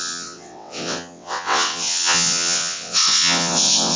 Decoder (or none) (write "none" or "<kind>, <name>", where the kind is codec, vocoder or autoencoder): vocoder, WaveNeXt